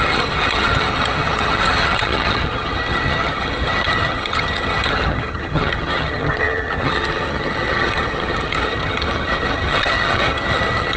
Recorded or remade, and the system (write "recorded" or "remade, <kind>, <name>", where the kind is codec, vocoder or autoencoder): remade, vocoder, HiFi-GAN